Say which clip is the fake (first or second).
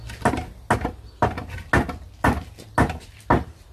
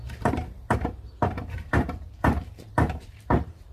second